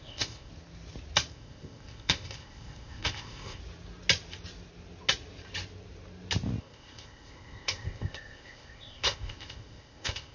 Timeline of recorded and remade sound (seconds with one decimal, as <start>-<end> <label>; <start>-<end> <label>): 0.0-0.5 remade; 0.5-1.3 recorded; 1.3-3.6 remade; 3.6-6.6 recorded; 6.6-10.3 remade